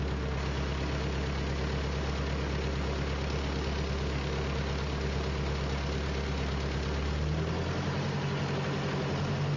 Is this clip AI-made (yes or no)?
no